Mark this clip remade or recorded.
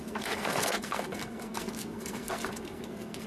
remade